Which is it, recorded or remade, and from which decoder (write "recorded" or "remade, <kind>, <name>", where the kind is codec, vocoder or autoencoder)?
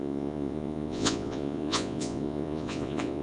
remade, vocoder, Vocos